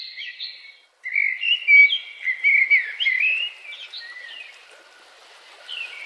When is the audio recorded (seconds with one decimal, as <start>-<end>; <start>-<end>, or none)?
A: 0.0-6.1